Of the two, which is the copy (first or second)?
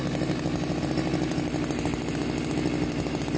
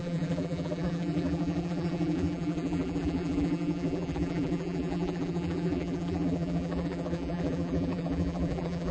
second